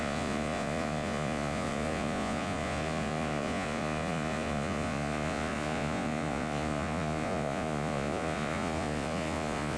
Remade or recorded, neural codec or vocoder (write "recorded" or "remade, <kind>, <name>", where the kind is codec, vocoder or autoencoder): remade, vocoder, Vocos